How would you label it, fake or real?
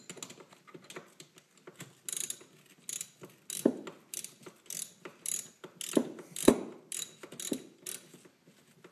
real